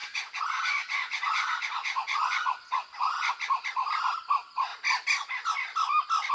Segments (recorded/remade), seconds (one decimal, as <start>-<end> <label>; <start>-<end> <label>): 0.0-3.3 remade; 3.3-6.3 recorded